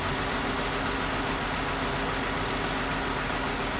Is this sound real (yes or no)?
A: yes